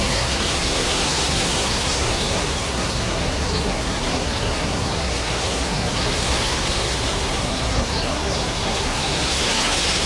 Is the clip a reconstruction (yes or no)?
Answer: yes